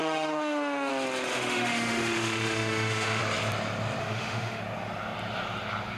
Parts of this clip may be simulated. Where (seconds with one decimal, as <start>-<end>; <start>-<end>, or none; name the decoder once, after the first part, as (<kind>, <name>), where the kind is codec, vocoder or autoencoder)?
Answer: 0.0-0.9 (autoencoder, DAC-VAE); 1.3-3.2; 4.0-4.6